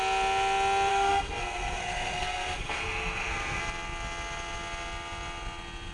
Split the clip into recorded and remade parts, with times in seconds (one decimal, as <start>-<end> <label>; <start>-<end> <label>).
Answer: 0.0-0.9 recorded; 0.9-3.6 remade; 3.6-5.9 recorded